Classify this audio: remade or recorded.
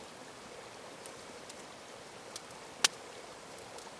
recorded